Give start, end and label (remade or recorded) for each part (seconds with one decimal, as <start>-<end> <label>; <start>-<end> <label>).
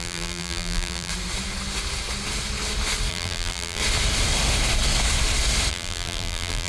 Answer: 0.0-1.1 remade; 1.1-3.1 recorded; 3.1-3.8 remade; 3.8-5.7 recorded; 5.7-6.7 remade